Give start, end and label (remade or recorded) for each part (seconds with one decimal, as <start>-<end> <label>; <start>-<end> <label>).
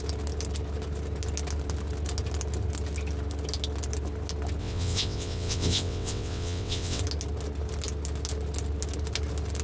0.0-4.6 recorded; 4.6-7.0 remade; 7.0-9.6 recorded